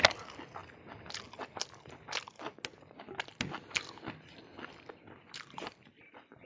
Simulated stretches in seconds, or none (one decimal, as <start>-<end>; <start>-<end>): none